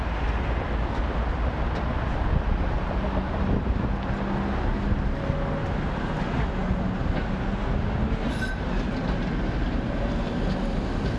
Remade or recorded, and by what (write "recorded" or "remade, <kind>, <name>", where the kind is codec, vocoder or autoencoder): recorded